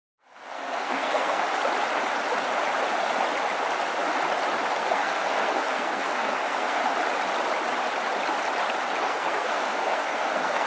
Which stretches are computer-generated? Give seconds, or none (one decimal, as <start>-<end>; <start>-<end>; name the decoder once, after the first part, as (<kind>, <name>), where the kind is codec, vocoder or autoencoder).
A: 0.0-1.4 (codec, SNAC); 4.7-6.8; 9.0-10.7